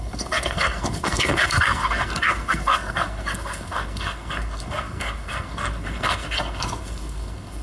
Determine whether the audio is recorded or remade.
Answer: remade